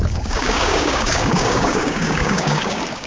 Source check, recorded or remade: remade